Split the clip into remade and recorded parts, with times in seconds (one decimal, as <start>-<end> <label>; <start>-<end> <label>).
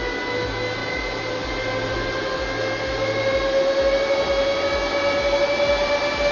0.0-6.3 recorded